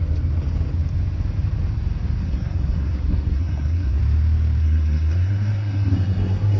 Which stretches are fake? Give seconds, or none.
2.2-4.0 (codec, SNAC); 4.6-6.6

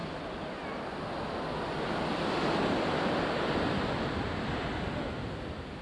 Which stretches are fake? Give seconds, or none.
none

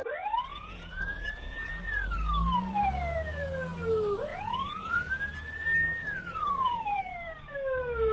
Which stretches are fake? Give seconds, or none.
0.5-1.7 (vocoder, Vocos); 4.3-5.1; 6.1-6.8

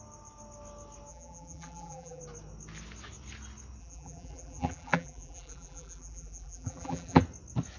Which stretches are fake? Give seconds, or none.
1.1-2.2 (vocoder, BigVGAN v2); 3.8-7.2